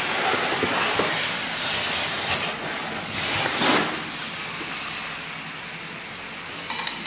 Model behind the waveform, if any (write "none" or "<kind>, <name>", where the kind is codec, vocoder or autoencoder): none